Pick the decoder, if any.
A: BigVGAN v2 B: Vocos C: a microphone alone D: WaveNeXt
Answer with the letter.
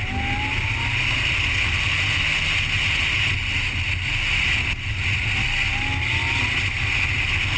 C